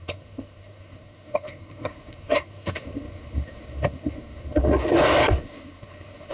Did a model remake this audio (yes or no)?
yes